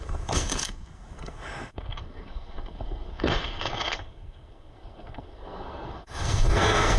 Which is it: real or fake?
fake